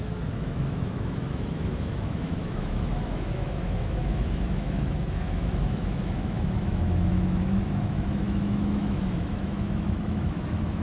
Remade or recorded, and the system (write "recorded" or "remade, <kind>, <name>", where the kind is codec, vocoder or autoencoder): remade, autoencoder, DAC-VAE